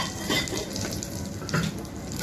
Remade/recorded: recorded